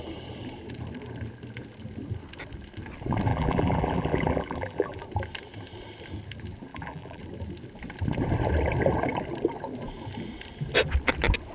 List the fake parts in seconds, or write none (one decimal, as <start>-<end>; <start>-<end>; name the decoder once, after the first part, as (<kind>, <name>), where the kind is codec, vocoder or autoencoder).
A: 3.3-5.0 (vocoder, BigVGAN v2); 6.7-7.2